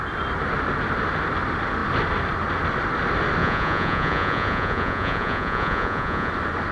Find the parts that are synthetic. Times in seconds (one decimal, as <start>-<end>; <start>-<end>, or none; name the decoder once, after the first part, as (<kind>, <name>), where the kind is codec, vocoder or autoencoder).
3.4-6.3 (vocoder, Vocos)